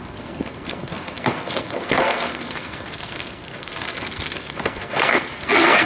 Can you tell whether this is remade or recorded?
remade